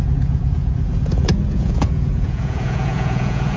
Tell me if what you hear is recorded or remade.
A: remade